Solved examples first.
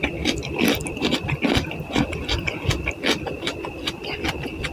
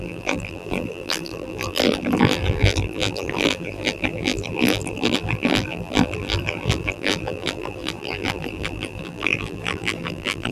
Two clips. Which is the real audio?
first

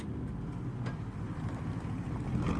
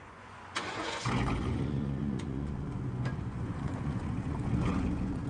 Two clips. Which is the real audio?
first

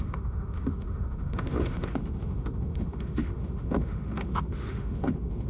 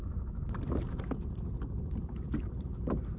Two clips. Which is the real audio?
second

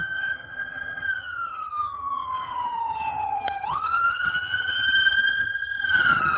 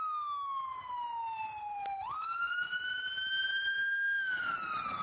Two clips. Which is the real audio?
second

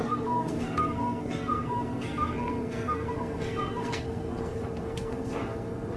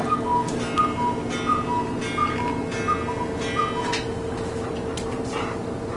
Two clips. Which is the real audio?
second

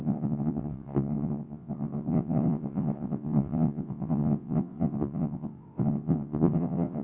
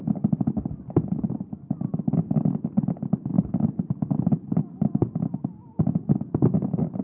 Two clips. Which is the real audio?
second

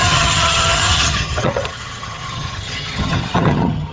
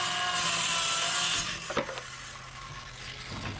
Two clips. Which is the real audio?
second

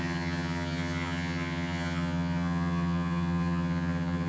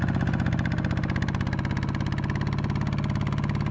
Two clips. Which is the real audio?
second